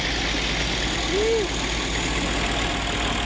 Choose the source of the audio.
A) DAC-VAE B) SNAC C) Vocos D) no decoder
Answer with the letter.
D